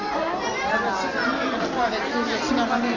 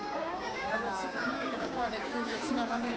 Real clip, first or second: first